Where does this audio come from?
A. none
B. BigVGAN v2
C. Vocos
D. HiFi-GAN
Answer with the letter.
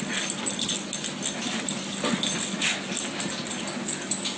A